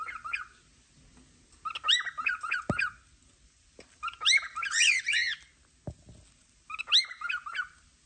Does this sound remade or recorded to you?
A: recorded